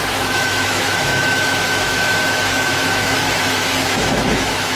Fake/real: fake